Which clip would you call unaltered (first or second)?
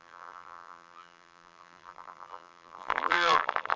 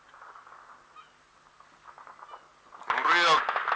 second